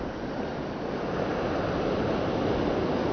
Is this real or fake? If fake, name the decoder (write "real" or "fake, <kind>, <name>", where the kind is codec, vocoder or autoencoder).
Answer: real